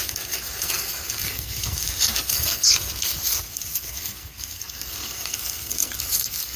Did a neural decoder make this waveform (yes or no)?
yes